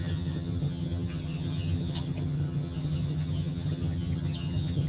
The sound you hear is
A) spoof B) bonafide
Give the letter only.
A